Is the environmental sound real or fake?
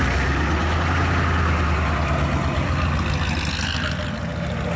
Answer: real